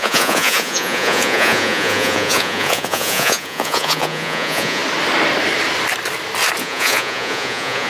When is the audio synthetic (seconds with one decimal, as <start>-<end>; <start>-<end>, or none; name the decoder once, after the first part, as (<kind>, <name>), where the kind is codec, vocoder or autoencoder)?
0.0-4.8 (vocoder, Vocos); 6.6-7.9

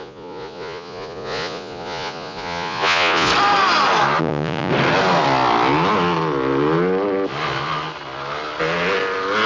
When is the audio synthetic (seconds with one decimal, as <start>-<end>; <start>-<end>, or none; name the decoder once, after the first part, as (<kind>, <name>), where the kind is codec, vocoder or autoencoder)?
0.0-3.3 (vocoder, Vocos); 4.2-4.7